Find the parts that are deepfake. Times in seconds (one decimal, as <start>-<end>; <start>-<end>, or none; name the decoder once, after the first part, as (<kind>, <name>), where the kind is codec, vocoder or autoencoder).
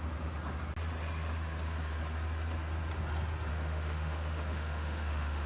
3.5-5.5 (autoencoder, DAC-VAE)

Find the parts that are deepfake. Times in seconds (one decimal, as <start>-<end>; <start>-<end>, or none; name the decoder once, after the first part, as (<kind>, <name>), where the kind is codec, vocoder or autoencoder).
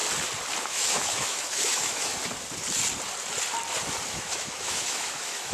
0.6-2.1 (autoencoder, DAC-VAE); 4.1-5.5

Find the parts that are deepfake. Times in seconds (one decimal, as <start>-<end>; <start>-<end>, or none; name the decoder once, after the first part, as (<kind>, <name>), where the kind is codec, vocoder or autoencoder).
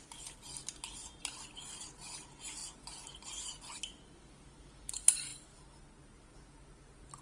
none